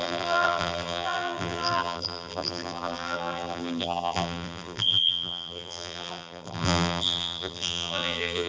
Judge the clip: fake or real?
fake